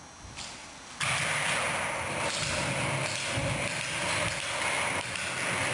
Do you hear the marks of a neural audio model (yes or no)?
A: no